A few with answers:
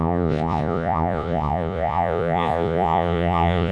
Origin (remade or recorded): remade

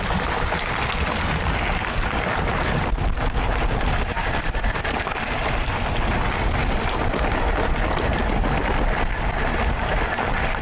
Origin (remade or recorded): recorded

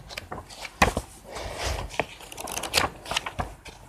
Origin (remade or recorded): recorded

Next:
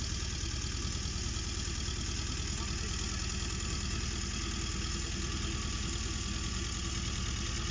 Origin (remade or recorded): recorded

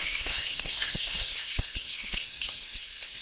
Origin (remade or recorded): remade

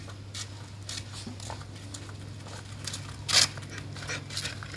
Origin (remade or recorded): recorded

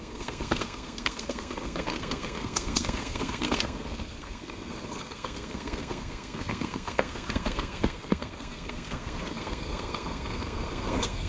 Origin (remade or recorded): remade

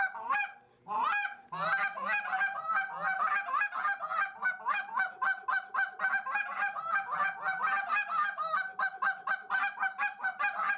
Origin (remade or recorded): recorded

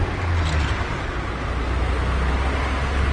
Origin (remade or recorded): recorded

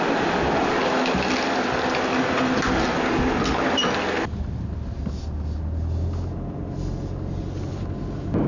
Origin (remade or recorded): recorded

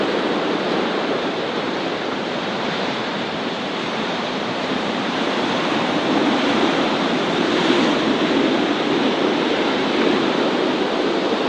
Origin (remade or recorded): remade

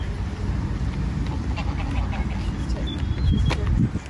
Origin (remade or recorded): recorded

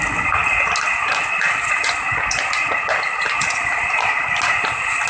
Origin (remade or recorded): recorded